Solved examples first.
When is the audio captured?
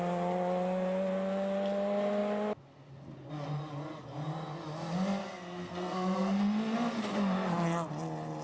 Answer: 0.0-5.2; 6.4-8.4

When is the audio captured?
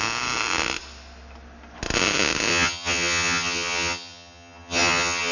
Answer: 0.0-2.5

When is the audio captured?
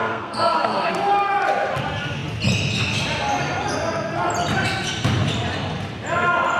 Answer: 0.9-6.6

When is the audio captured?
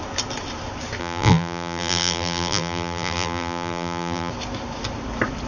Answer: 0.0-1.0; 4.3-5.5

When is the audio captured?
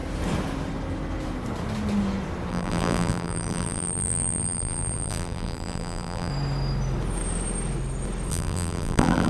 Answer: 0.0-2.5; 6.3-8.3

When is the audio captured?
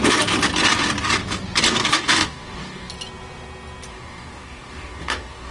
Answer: 0.0-1.8; 2.9-3.9